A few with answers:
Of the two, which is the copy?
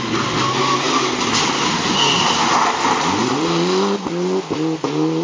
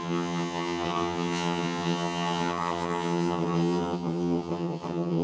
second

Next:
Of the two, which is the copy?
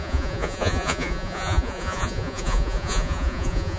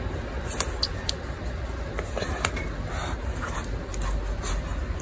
first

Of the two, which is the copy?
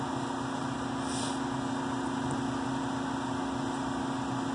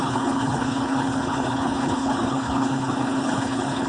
second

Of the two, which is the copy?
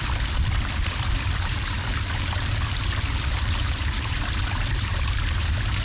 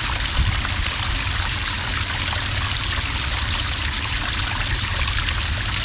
first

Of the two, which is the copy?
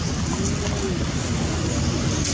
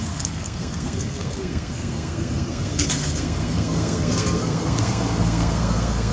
second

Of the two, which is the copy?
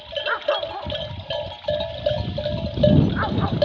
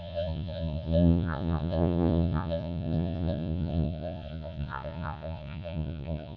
second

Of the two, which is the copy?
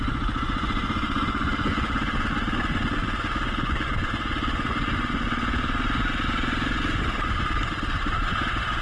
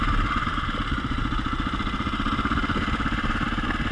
first